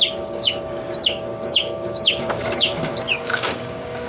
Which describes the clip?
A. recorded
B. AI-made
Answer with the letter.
B